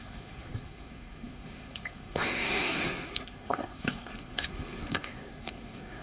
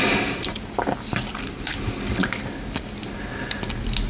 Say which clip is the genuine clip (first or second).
second